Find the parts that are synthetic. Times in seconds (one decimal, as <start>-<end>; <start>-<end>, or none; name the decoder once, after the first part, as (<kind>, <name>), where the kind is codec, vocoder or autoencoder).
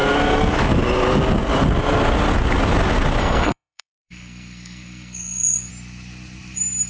3.2-5.7 (codec, SNAC)